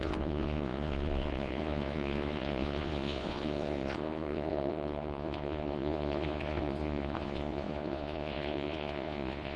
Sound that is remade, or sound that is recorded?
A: remade